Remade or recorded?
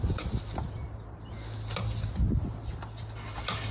recorded